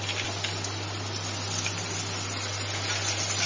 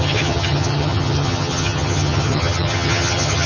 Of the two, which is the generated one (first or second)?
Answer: second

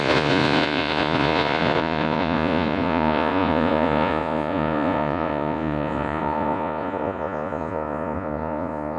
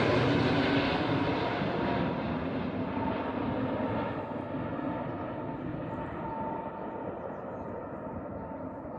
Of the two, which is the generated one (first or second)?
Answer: first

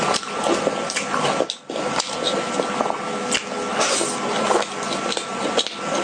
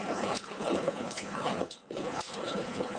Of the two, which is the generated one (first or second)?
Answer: second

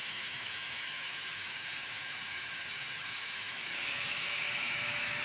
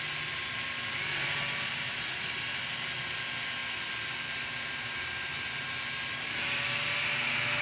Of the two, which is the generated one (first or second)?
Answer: first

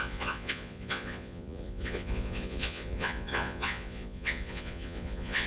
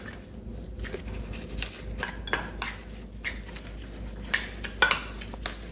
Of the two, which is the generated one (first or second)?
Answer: first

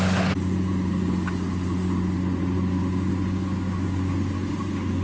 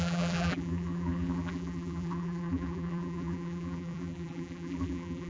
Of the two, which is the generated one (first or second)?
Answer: second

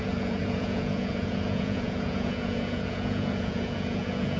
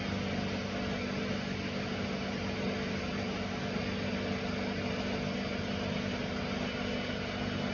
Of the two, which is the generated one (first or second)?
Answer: first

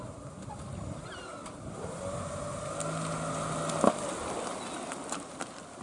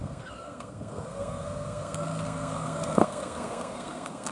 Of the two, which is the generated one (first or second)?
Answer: second